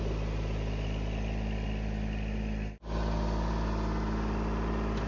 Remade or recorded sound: recorded